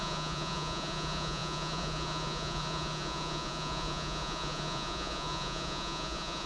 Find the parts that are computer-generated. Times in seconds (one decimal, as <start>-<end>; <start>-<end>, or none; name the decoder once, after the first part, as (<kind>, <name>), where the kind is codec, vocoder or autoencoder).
0.0-6.5 (vocoder, Vocos)